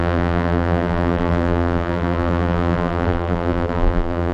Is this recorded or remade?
remade